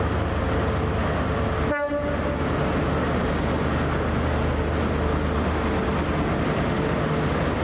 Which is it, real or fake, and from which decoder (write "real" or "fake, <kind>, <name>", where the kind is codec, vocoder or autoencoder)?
real